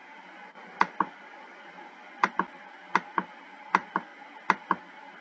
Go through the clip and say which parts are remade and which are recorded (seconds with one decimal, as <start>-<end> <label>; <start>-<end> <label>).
0.0-2.3 remade; 2.3-5.2 recorded